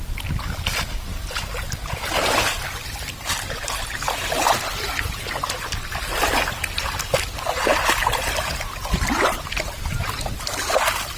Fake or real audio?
real